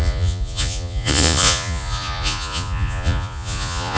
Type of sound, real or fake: fake